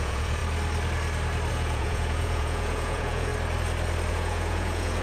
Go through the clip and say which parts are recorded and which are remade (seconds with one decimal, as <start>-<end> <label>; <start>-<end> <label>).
0.0-0.4 remade; 0.4-1.5 recorded; 1.5-3.3 remade; 3.3-4.1 recorded; 4.1-5.0 remade